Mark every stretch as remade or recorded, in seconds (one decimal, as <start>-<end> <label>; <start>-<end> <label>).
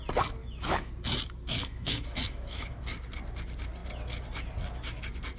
0.0-0.4 recorded; 0.4-0.9 remade; 0.9-1.6 recorded; 1.6-2.8 remade; 2.8-5.4 recorded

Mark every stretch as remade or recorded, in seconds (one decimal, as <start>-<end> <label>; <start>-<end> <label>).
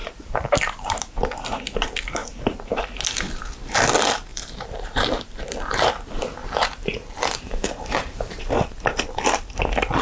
0.0-1.0 remade; 1.0-2.2 recorded; 2.2-2.8 remade; 2.8-4.3 recorded; 4.3-5.9 remade; 5.9-6.4 recorded; 6.4-8.4 remade; 8.4-10.0 recorded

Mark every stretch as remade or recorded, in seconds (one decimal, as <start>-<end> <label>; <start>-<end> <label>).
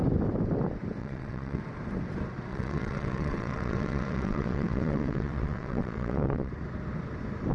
0.0-1.0 recorded; 1.0-1.6 remade; 1.6-2.5 recorded; 2.5-6.5 remade; 6.5-7.5 recorded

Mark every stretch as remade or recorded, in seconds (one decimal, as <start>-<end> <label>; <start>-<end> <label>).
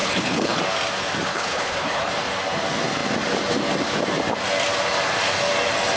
0.0-0.6 remade; 0.6-1.3 recorded; 1.3-2.1 remade; 2.1-6.0 recorded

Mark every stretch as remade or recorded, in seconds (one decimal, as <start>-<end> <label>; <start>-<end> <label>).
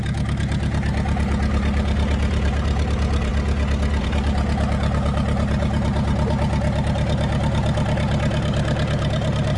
0.0-3.3 remade; 3.3-4.0 recorded; 4.0-9.6 remade